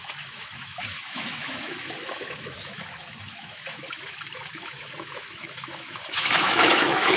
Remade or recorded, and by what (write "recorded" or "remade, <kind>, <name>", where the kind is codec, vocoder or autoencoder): remade, autoencoder, DAC-VAE